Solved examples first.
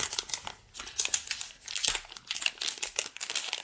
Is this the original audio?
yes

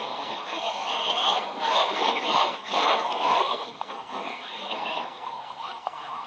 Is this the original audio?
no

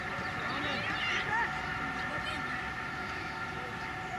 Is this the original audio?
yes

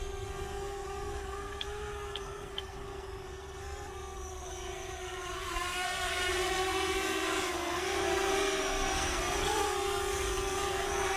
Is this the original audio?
no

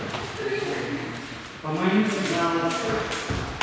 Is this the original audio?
yes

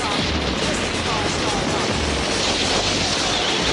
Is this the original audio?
yes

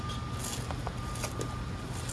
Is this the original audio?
yes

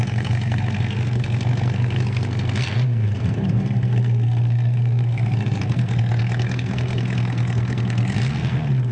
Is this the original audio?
no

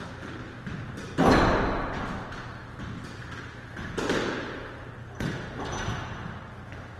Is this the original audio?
yes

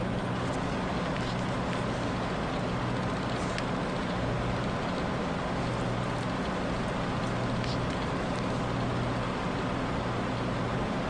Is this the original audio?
yes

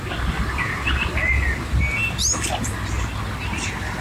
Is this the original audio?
yes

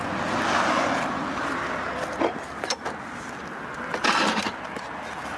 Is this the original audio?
yes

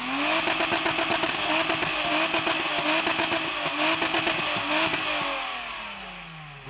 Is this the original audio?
yes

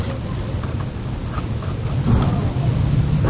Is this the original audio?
yes